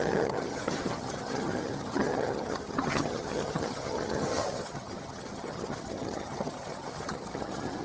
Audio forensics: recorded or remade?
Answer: remade